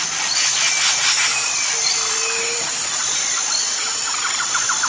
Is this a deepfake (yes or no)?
no